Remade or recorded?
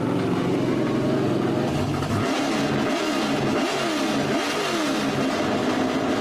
recorded